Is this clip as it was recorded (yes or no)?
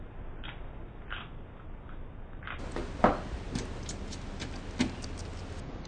yes